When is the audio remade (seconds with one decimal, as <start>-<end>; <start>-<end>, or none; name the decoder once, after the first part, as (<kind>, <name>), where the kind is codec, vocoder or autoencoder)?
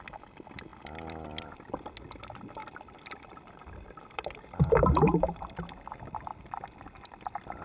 0.7-1.5 (vocoder, BigVGAN v2); 2.6-4.3; 6.3-7.6